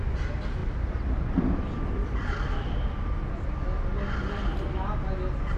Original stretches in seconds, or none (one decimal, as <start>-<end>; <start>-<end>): 0.0-5.6